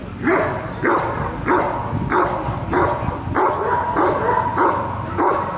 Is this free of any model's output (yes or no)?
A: yes